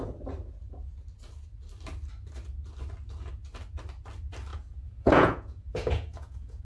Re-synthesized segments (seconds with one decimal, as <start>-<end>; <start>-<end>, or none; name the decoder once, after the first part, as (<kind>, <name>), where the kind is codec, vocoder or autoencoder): 4.5-6.6 (vocoder, Vocos)

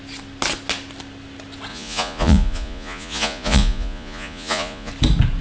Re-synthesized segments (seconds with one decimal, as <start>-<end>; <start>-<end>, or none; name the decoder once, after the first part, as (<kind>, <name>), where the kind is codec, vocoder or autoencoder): 1.7-4.9 (vocoder, Vocos)

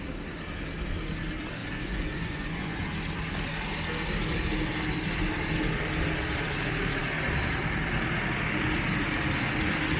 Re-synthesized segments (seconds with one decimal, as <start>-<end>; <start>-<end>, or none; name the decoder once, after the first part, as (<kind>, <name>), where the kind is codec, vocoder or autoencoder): 1.6-2.8 (vocoder, Vocos)

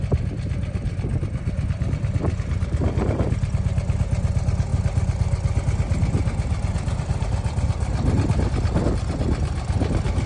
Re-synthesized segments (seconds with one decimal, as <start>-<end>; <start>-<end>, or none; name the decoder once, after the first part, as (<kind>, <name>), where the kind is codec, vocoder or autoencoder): none